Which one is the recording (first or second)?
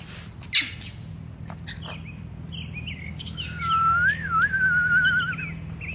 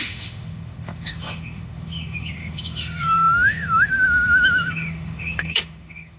first